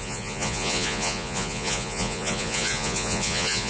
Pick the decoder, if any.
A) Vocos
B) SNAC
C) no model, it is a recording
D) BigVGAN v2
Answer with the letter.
A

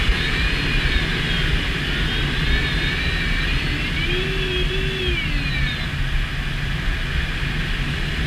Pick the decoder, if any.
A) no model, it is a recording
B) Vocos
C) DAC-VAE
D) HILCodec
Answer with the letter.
A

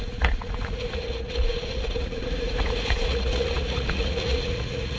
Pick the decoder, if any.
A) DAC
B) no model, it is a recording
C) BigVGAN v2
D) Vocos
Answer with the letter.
D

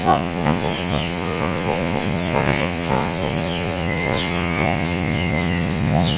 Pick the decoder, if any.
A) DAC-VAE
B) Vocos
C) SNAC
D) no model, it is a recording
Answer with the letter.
B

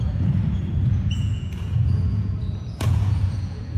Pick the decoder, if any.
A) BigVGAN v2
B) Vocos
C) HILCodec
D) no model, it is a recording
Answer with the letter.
B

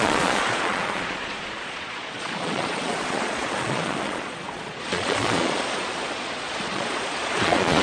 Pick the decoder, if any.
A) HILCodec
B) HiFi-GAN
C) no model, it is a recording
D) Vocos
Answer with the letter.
D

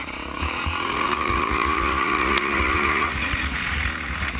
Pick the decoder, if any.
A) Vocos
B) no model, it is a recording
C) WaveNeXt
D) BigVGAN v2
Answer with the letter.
A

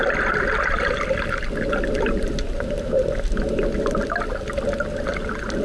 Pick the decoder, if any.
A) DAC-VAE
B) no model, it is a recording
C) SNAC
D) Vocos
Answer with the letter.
B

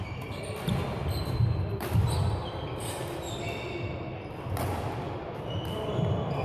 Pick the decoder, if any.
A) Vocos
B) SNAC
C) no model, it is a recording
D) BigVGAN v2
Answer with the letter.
C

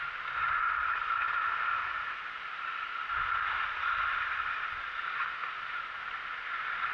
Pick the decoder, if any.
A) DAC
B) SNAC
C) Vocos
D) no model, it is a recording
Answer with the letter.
D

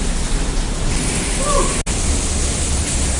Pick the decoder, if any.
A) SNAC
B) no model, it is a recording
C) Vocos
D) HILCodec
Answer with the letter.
B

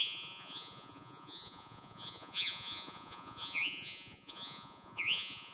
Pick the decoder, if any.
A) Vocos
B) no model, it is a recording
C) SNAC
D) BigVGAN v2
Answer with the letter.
A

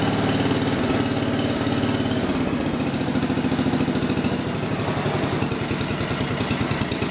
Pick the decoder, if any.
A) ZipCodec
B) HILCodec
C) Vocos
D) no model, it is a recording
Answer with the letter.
D